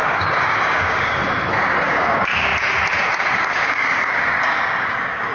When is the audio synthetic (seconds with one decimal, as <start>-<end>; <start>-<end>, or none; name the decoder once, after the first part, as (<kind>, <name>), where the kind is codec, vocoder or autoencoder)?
0.0-1.2 (codec, DAC); 1.8-2.5; 3.0-5.3